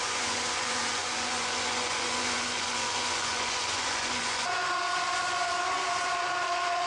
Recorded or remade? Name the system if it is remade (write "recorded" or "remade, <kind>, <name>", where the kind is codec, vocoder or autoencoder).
remade, vocoder, Vocos